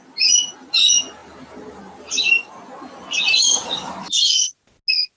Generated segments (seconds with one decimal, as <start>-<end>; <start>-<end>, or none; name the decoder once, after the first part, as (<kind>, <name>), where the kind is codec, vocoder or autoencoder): 1.2-2.7 (vocoder, BigVGAN v2)